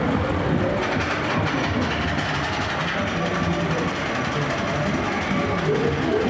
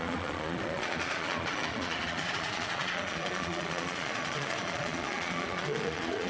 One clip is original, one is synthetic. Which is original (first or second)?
first